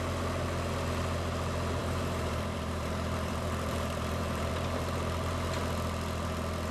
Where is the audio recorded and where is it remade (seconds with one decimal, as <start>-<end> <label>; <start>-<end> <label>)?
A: 0.0-1.8 recorded; 1.8-4.5 remade; 4.5-6.7 recorded